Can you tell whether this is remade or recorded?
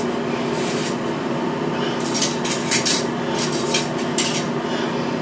recorded